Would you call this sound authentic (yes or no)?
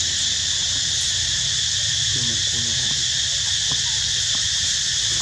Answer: yes